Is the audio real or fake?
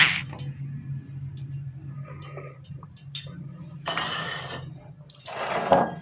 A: real